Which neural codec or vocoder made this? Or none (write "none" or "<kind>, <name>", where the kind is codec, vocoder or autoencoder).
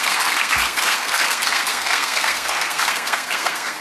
codec, SNAC